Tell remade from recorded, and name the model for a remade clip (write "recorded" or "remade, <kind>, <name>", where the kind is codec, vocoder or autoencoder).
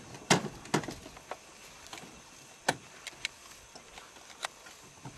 recorded